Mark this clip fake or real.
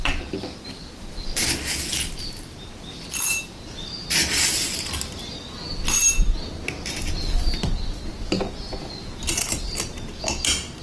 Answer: real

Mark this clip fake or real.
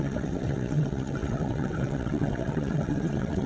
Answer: fake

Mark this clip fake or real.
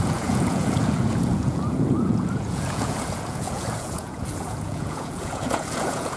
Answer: fake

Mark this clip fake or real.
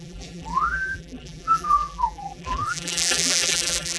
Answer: fake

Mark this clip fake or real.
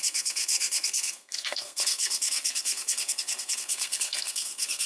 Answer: fake